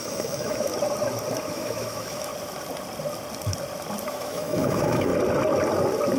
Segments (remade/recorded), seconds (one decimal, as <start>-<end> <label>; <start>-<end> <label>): 0.0-0.7 remade; 0.7-1.5 recorded; 1.5-2.3 remade; 2.3-4.1 recorded; 4.1-5.1 remade; 5.1-6.2 recorded